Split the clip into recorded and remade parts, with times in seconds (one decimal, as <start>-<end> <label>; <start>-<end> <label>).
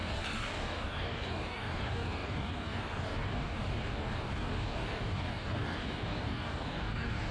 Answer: 0.0-7.3 remade